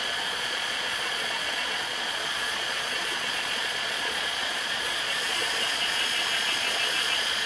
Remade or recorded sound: remade